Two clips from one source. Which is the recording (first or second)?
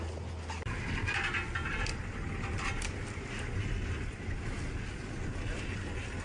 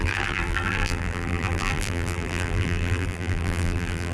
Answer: first